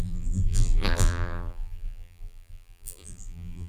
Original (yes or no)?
no